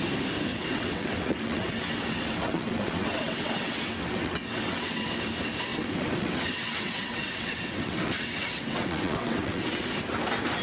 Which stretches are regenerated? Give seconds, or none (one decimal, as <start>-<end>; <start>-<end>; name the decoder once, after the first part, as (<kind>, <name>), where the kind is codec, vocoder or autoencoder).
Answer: 0.5-5.1 (vocoder, WaveNeXt); 5.7-9.8